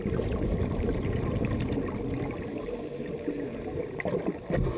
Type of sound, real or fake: real